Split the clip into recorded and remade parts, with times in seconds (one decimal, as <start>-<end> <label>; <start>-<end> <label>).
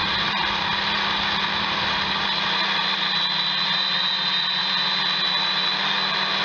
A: 0.0-6.4 recorded